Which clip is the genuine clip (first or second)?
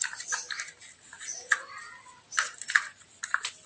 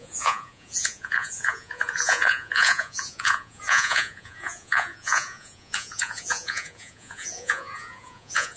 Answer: first